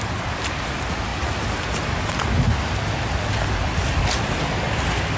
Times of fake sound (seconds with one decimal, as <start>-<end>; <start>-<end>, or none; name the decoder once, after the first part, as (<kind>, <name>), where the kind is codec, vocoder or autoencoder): none